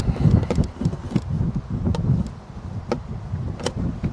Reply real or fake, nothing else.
real